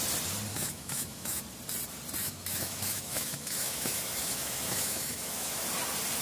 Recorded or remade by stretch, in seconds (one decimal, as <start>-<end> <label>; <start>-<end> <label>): 0.0-0.5 recorded; 0.5-1.4 remade; 1.4-2.2 recorded; 2.2-5.6 remade; 5.6-6.2 recorded